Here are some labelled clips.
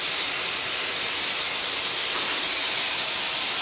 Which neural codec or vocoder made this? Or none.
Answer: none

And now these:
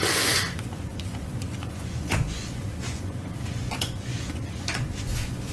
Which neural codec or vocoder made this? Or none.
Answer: vocoder, Vocos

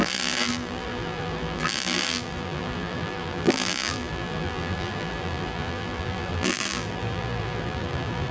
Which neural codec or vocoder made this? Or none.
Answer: vocoder, BigVGAN v2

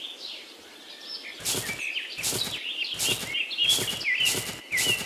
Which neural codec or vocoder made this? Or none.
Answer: none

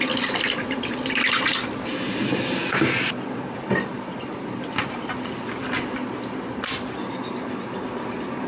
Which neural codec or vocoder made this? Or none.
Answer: none